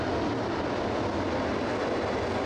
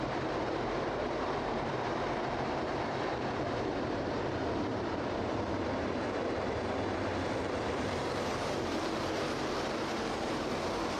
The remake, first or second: second